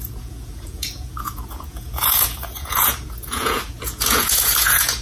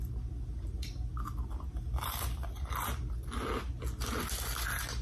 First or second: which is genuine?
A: second